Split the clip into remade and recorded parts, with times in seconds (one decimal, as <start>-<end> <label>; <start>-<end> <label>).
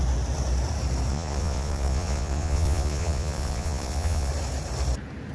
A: 0.0-1.1 recorded; 1.1-4.3 remade; 4.3-5.3 recorded